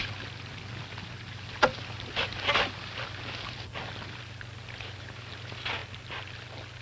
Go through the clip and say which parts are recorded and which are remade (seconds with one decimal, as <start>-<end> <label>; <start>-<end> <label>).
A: 0.0-6.8 recorded